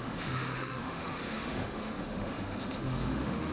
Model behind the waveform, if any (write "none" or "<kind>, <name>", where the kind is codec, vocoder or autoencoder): autoencoder, DAC-VAE